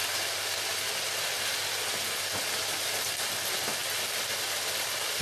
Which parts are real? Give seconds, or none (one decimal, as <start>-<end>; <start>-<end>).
0.0-5.2